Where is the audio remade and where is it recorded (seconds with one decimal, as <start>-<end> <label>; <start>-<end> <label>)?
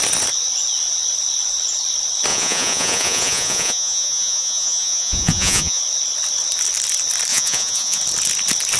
0.0-2.3 recorded; 2.3-5.8 remade; 5.8-7.3 recorded; 7.3-8.0 remade; 8.0-8.8 recorded